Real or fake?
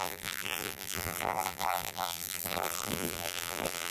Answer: fake